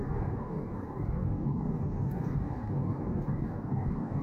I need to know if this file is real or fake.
fake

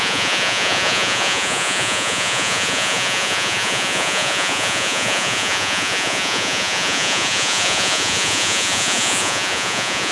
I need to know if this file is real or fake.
fake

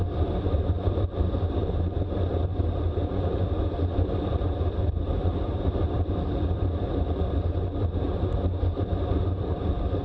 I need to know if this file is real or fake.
fake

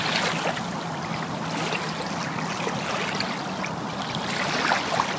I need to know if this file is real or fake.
real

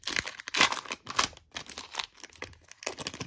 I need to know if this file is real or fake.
real